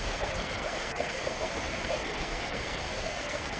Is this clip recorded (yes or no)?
no